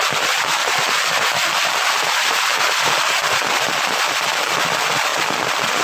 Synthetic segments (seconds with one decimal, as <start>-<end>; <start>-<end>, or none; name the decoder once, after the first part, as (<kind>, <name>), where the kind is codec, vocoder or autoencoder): 0.6-3.8 (vocoder, BigVGAN v2)